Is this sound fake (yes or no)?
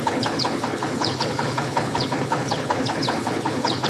yes